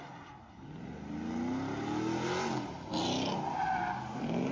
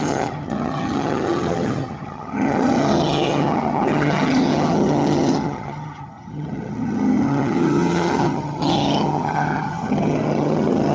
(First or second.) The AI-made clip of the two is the second